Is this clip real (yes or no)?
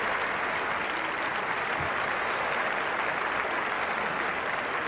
yes